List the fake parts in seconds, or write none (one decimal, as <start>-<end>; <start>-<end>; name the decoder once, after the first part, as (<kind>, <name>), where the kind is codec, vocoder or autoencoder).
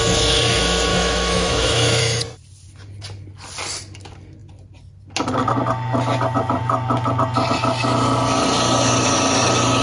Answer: 0.9-2.0 (autoencoder, DAC-VAE)